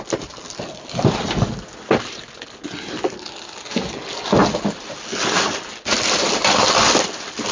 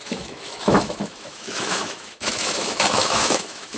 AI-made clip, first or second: second